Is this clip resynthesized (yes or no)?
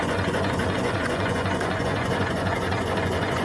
yes